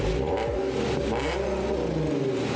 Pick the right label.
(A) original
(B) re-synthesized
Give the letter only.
A